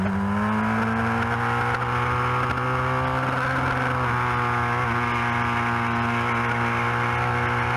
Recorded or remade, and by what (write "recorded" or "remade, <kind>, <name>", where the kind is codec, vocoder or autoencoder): recorded